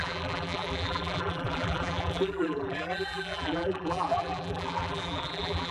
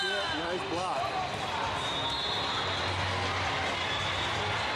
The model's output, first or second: first